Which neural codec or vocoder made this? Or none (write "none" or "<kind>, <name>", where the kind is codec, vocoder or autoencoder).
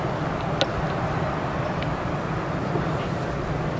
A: none